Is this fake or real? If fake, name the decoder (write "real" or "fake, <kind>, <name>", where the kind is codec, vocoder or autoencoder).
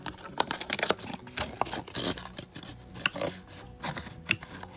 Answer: real